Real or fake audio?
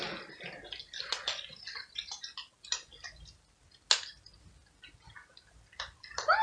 real